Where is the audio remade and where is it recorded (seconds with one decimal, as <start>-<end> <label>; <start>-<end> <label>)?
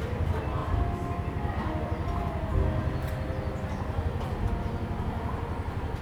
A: 0.0-6.0 recorded